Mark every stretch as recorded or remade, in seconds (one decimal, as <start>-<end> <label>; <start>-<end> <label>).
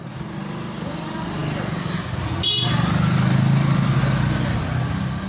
0.0-5.3 recorded